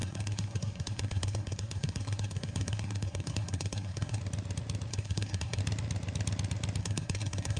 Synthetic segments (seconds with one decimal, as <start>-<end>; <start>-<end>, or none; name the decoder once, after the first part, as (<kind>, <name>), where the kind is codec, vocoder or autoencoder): 0.0-4.2 (codec, SNAC); 4.9-5.6; 6.8-7.6